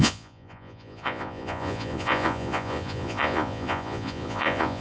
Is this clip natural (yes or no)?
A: no